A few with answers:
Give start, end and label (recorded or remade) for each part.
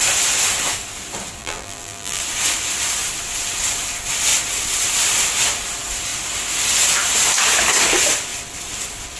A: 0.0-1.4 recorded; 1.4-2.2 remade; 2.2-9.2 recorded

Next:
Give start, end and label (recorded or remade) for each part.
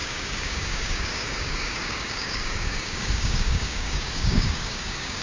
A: 0.0-5.2 remade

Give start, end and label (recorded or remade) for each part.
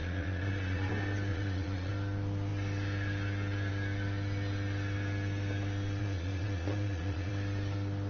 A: 0.0-0.9 remade; 0.9-1.3 recorded; 1.3-1.9 remade; 1.9-6.0 recorded; 6.0-7.3 remade; 7.3-8.1 recorded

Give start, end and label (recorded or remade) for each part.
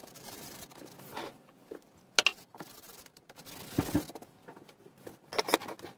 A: 0.0-0.9 remade; 0.9-2.3 recorded; 2.3-3.4 remade; 3.4-6.0 recorded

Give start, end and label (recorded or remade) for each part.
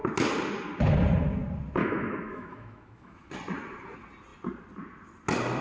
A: 0.0-1.8 recorded; 1.8-3.3 remade; 3.3-5.6 recorded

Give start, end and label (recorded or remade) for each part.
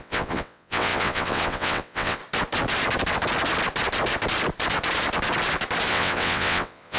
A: 0.0-2.2 remade; 2.2-5.9 recorded; 5.9-7.0 remade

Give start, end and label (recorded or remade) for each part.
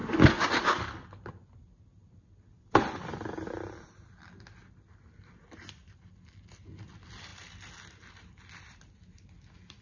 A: 0.0-9.8 recorded